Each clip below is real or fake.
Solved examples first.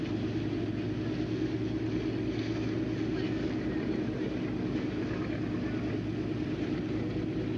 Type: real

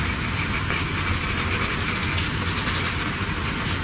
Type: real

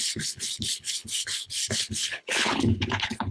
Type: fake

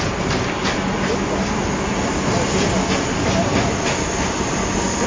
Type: real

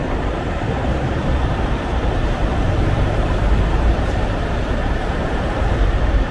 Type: fake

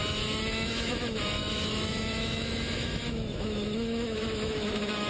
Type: fake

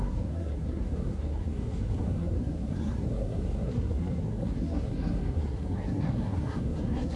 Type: fake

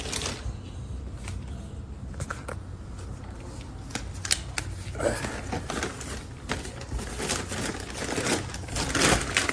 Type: real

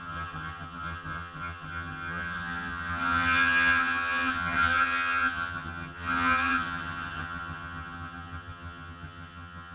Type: fake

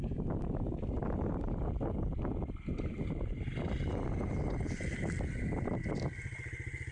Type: real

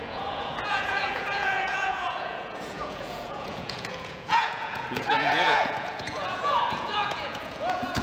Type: fake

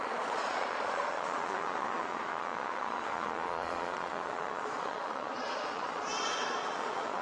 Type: fake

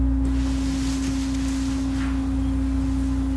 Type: real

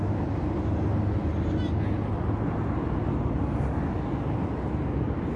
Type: real